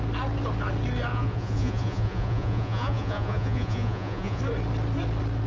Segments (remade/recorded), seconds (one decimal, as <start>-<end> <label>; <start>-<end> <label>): 0.0-1.1 recorded; 1.1-4.4 remade; 4.4-5.5 recorded